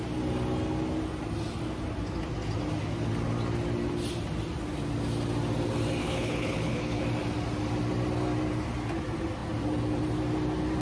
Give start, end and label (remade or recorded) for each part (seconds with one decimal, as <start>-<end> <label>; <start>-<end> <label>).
0.0-6.0 recorded; 6.0-7.0 remade; 7.0-10.8 recorded